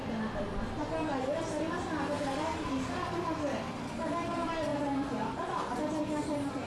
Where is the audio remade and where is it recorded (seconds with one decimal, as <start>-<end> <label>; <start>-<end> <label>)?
0.0-6.7 recorded